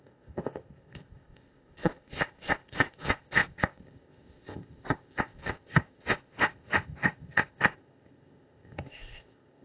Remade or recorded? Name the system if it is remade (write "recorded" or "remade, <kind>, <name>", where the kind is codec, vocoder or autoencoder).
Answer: remade, codec, ZipCodec